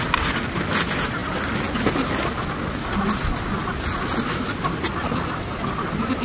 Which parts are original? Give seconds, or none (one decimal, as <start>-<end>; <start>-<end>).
0.0-6.2